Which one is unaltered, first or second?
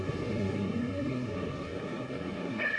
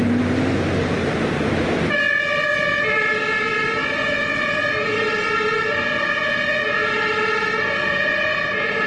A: second